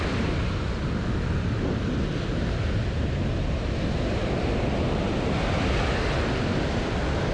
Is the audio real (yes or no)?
yes